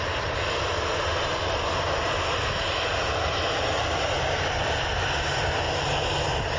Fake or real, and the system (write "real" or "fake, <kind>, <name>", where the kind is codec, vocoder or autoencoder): real